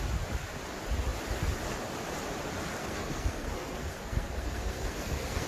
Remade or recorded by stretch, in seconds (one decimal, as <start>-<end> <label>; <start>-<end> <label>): 0.0-2.8 recorded; 2.8-5.5 remade